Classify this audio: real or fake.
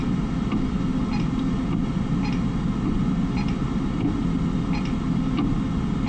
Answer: real